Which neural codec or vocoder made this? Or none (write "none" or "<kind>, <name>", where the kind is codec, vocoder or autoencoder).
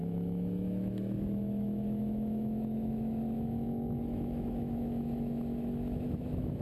autoencoder, DAC-VAE